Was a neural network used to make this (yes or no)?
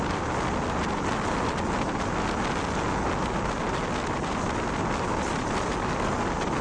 no